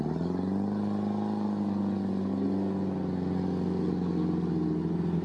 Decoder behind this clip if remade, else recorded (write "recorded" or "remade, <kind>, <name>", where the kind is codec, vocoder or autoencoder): recorded